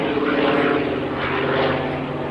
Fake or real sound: real